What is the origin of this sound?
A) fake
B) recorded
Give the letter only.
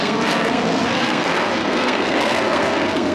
A